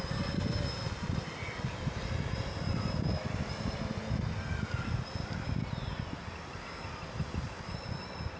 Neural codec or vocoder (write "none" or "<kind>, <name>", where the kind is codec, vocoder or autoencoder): none